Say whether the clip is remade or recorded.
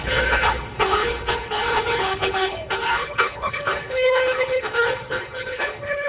remade